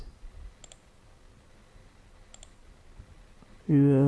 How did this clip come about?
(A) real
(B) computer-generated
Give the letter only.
A